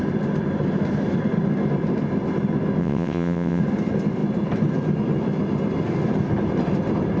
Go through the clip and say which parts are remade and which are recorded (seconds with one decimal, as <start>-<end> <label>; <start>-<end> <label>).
0.0-2.8 recorded; 2.8-3.6 remade; 3.6-7.2 recorded